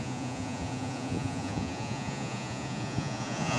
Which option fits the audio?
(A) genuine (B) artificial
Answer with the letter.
B